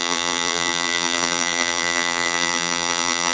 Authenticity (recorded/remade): remade